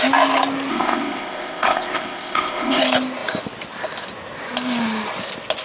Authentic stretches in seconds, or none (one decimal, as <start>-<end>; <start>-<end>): 0.0-0.7; 2.8-5.6